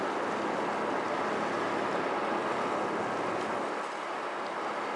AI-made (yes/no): no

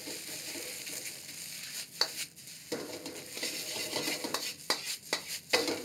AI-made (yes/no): no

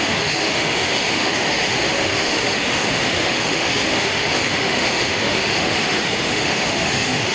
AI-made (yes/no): yes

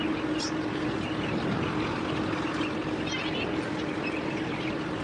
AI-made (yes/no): no